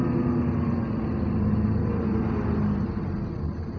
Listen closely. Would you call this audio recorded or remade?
recorded